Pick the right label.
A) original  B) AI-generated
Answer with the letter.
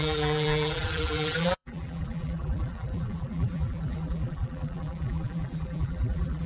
B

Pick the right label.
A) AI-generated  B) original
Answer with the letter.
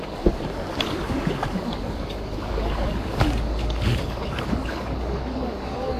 A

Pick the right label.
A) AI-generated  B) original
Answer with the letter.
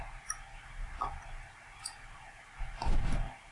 B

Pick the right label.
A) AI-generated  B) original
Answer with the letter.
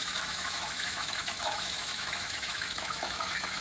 A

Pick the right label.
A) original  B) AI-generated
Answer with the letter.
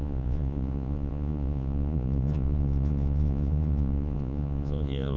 B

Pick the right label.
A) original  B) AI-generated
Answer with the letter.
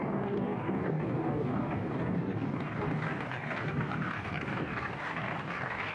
B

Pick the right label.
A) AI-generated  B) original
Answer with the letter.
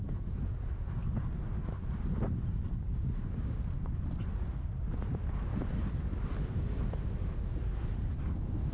B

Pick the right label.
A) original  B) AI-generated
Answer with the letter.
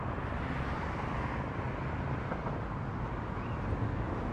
A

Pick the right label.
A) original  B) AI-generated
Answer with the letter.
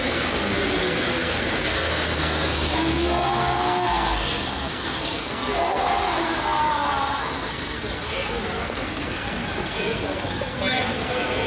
B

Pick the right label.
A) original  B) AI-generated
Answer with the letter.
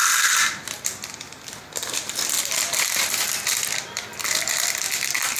B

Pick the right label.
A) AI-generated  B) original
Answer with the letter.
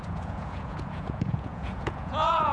A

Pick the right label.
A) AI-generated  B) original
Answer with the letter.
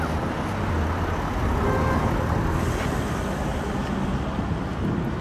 B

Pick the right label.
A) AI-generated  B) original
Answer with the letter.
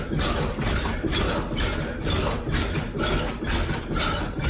B